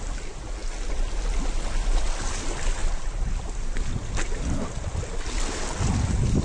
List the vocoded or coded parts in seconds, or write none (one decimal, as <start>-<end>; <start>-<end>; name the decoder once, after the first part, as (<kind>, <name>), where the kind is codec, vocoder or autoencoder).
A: none